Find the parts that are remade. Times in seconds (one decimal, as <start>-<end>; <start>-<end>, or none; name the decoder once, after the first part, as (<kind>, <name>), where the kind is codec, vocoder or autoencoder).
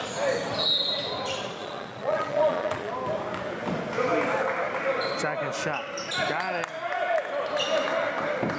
1.6-2.9 (vocoder, Vocos)